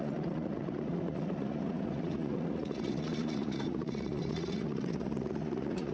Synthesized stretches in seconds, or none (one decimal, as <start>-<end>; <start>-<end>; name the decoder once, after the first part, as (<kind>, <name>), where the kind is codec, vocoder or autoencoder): 0.0-5.9 (vocoder, Vocos)